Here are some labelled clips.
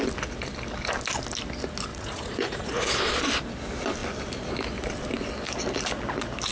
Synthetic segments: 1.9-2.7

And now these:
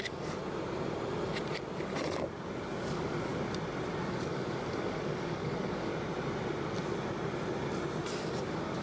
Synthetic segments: 0.0-0.4; 2.8-3.3; 4.1-5.9; 8.2-8.8